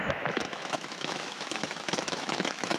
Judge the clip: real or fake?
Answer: fake